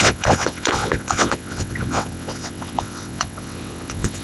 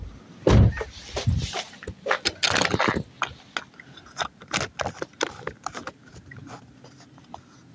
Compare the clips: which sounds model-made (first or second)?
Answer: first